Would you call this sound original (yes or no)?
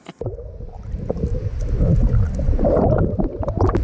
yes